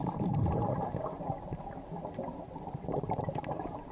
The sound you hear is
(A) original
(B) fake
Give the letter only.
B